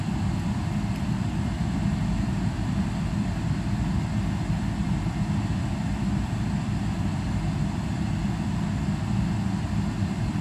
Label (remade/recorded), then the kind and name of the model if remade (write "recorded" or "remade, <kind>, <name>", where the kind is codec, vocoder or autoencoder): recorded